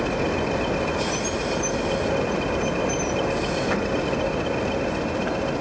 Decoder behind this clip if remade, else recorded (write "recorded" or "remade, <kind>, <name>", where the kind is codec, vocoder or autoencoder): recorded